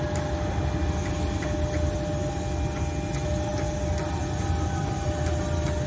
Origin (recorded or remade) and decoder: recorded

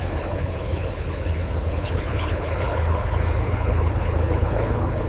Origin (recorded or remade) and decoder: remade, codec, HILCodec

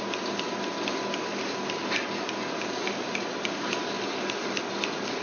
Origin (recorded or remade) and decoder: recorded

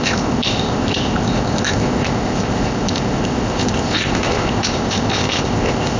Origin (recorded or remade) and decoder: remade, codec, ZipCodec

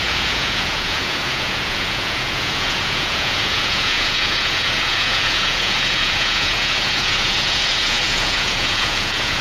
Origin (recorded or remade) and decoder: remade, vocoder, Vocos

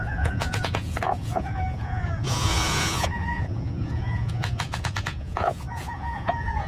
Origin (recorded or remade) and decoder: remade, vocoder, Vocos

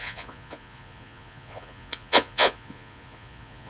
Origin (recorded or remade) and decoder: remade, vocoder, Vocos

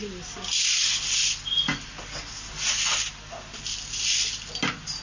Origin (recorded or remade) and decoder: recorded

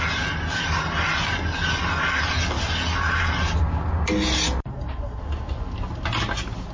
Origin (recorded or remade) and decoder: recorded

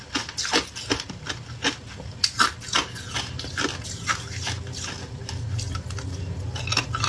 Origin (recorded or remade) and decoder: recorded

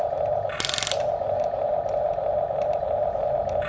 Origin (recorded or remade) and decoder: recorded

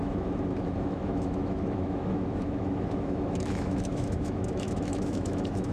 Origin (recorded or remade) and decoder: remade, autoencoder, DAC-VAE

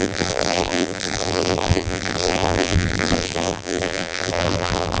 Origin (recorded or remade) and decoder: remade, vocoder, BigVGAN v2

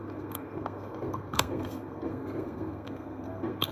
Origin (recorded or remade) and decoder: remade, codec, SNAC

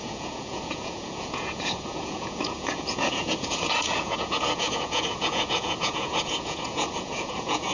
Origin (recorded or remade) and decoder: remade, vocoder, Vocos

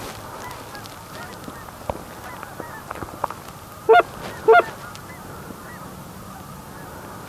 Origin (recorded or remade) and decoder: recorded